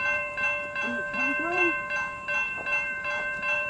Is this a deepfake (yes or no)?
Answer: yes